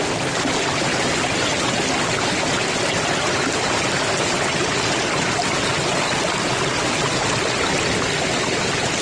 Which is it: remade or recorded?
recorded